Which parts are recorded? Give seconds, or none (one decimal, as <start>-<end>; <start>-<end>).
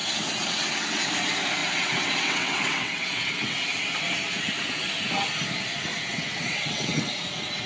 1.1-1.6; 3.6-6.1; 7.1-7.7